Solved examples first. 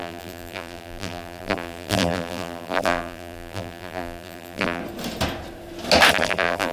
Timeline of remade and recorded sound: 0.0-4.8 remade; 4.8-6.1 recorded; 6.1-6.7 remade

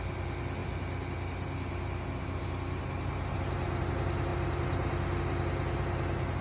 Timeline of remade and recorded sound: 0.0-6.4 recorded

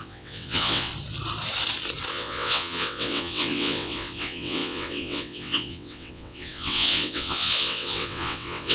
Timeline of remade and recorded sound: 0.0-0.9 remade; 0.9-2.1 recorded; 2.1-8.7 remade

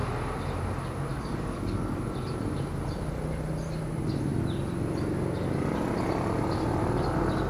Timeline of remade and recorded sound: 0.0-1.1 recorded; 1.1-2.0 remade; 2.0-7.5 recorded